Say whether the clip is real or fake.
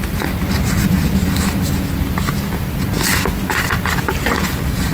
real